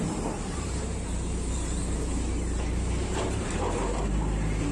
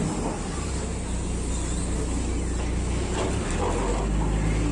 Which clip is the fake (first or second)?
first